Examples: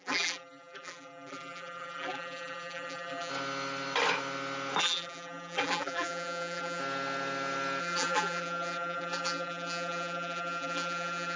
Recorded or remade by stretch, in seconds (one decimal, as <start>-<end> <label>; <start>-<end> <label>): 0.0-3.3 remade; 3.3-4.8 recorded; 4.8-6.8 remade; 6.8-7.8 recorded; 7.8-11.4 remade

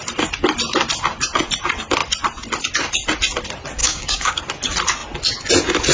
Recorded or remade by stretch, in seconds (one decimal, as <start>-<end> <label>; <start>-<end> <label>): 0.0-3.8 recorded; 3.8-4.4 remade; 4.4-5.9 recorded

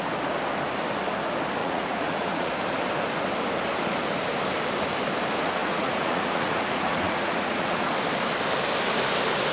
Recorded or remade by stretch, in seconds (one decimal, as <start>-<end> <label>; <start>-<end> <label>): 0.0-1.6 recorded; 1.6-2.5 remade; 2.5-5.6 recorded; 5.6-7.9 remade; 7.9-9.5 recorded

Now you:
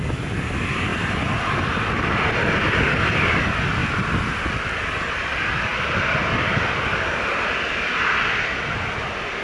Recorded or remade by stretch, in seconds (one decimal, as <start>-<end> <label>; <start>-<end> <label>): 0.0-0.9 recorded; 0.9-3.4 remade; 3.4-3.8 recorded; 3.8-4.8 remade; 4.8-9.4 recorded

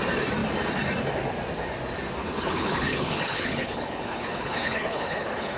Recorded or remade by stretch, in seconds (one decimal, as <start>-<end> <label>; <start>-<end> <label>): 0.0-2.2 recorded; 2.2-5.6 remade

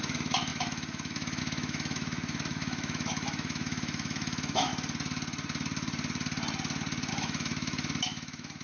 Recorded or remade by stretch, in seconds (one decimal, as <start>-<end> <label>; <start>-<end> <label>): 0.0-4.7 remade; 4.7-7.1 recorded; 7.1-8.6 remade